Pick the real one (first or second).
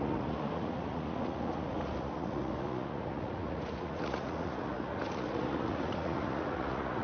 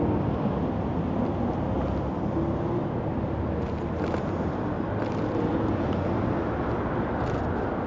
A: second